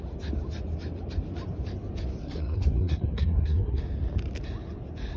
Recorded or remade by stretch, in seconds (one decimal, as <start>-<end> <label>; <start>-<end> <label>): 0.0-2.2 recorded; 2.2-3.8 remade; 3.8-5.2 recorded